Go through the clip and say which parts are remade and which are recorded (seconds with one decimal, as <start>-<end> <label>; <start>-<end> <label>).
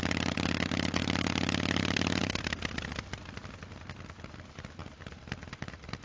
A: 0.0-6.0 recorded